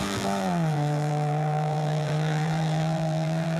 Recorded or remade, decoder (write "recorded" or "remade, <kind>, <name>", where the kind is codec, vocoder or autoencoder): remade, vocoder, BigVGAN v2